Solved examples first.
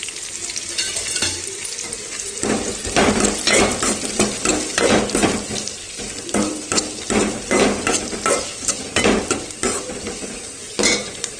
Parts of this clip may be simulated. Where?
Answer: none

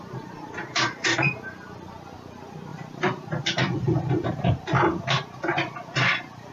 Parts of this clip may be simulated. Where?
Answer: 2.7-5.0 (vocoder, BigVGAN v2); 5.5-6.5

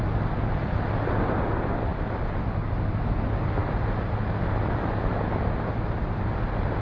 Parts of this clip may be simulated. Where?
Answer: none

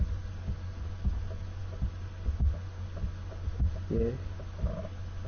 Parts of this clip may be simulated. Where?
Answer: none

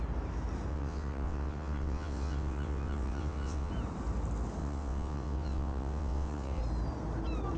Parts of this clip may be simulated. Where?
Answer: 0.7-3.7 (vocoder, WaveNeXt); 4.6-6.6

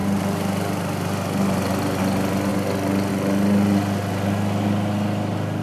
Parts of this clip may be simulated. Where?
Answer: none

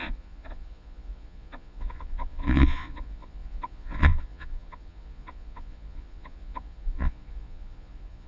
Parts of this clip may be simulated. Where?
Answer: 0.0-8.3 (vocoder, Vocos)

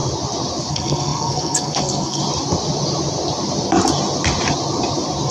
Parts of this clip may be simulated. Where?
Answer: 0.7-2.2 (codec, SNAC)